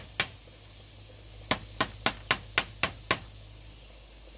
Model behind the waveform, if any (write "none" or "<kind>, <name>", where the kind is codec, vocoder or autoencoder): none